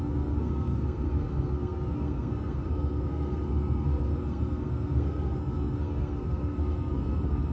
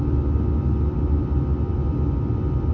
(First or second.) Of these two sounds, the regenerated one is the first